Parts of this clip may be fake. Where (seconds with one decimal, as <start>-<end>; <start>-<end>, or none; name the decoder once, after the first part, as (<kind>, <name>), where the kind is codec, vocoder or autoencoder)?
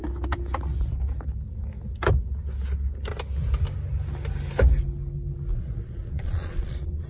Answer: 5.5-7.1 (vocoder, Vocos)